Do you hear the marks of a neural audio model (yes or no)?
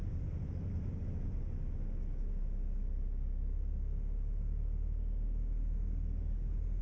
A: no